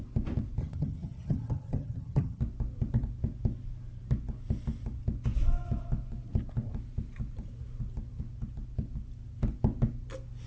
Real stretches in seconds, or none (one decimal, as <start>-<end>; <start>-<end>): 0.0-0.6; 2.4-10.5